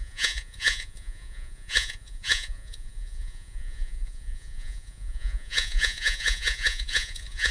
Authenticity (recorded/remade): remade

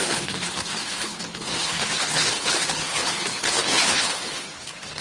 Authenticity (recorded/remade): remade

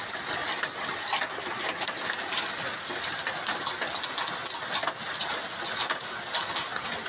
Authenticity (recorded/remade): recorded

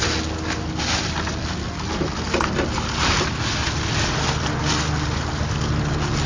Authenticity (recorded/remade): recorded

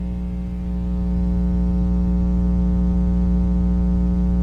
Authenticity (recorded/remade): recorded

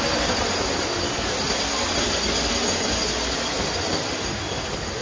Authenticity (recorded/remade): recorded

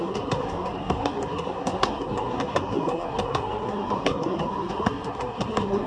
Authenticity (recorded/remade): remade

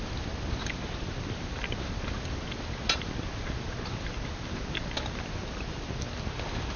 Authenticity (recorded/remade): recorded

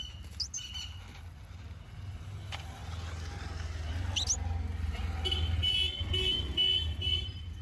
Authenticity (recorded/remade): recorded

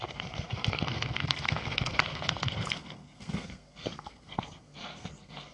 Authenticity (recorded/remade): remade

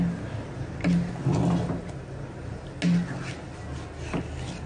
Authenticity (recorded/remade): recorded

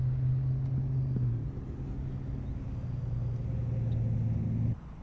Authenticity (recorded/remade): recorded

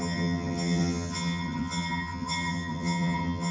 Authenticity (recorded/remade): remade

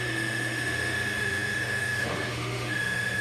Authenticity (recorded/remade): remade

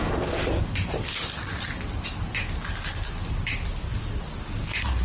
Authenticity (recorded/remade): recorded